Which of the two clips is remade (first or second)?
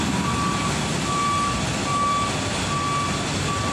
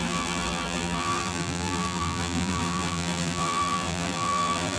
second